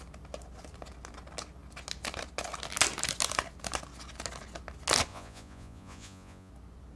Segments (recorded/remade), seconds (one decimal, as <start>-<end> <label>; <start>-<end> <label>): 0.0-5.1 recorded; 5.1-6.5 remade; 6.5-7.0 recorded